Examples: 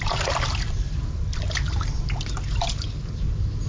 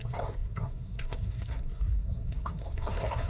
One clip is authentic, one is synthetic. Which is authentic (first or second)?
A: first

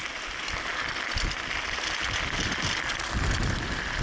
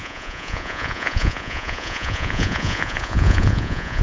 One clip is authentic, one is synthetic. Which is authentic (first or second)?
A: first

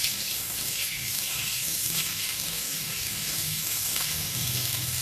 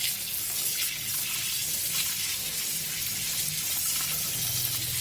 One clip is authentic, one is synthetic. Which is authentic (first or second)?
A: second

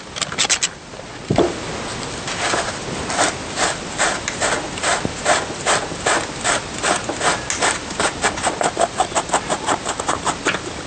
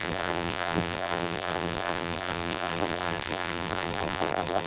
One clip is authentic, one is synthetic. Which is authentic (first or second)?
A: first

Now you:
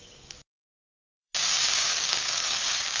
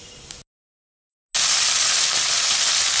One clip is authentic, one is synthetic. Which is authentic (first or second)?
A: second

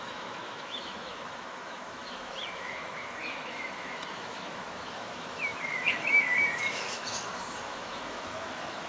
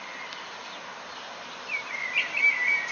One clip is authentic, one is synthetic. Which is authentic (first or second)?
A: second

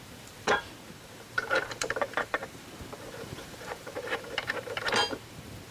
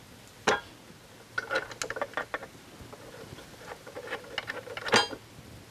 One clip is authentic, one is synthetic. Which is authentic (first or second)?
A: second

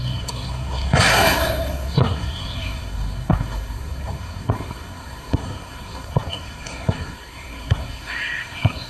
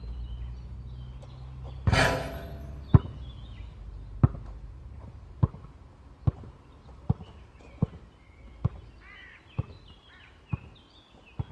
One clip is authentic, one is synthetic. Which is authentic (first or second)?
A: second